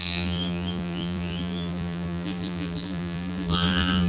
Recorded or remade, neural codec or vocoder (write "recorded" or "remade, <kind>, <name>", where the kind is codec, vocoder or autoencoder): remade, vocoder, BigVGAN v2